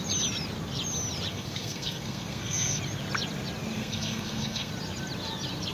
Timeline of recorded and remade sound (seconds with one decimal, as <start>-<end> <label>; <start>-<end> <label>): 0.0-1.3 recorded; 1.3-2.8 remade; 2.8-3.8 recorded; 3.8-4.7 remade; 4.7-5.7 recorded